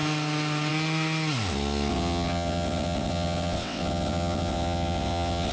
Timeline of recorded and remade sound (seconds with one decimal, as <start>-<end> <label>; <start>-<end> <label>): 0.0-1.9 recorded; 1.9-5.5 remade